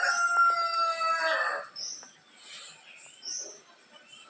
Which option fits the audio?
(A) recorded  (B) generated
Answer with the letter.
A